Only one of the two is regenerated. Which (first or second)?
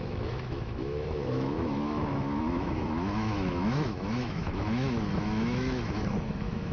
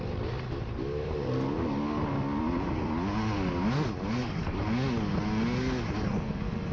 first